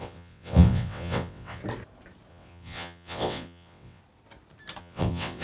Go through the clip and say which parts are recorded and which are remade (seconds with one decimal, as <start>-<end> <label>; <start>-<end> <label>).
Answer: 0.0-1.6 remade; 1.6-2.3 recorded; 2.3-4.0 remade; 4.0-4.8 recorded; 4.8-5.4 remade